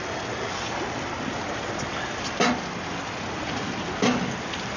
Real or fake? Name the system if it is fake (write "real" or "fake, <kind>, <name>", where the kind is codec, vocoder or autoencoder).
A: real